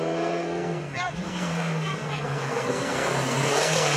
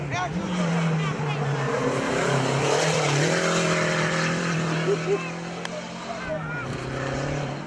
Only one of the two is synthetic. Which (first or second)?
first